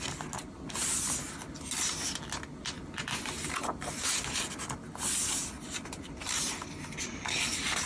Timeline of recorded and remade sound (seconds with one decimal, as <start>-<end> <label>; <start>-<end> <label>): 0.0-7.9 recorded